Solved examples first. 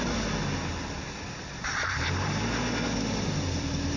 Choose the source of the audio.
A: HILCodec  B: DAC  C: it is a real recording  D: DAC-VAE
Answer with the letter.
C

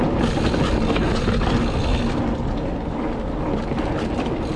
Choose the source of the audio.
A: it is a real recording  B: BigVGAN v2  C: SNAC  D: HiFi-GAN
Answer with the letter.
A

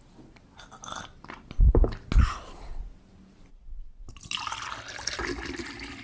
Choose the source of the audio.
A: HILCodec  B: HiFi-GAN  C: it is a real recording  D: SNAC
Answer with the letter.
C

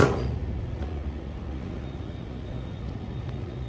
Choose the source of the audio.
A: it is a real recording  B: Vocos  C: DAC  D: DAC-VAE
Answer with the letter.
B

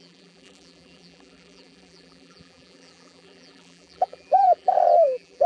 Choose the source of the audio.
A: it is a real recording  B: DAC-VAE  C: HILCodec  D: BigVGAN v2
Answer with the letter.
D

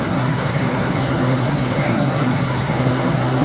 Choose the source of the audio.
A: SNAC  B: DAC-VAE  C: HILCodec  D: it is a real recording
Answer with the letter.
A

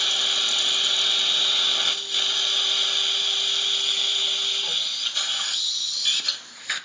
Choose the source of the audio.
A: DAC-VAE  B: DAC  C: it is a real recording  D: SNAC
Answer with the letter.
C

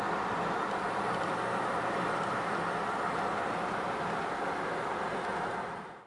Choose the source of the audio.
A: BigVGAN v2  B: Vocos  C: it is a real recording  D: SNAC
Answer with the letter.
C